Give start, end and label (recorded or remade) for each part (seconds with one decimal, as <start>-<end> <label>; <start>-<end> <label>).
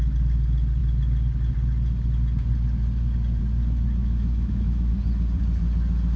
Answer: 0.0-4.0 recorded; 4.0-4.9 remade; 4.9-6.2 recorded